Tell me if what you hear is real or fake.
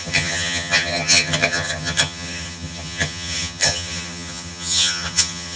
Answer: fake